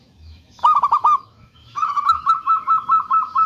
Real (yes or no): no